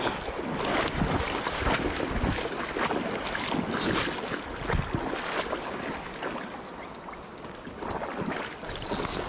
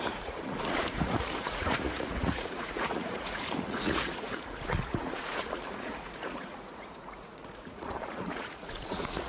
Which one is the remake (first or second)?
second